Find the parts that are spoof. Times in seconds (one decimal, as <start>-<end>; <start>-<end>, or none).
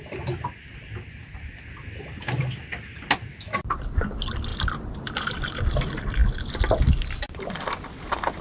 none